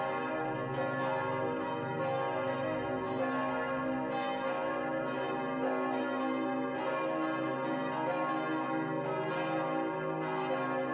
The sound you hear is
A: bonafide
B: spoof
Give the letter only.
A